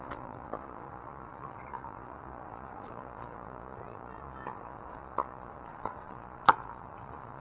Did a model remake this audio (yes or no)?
yes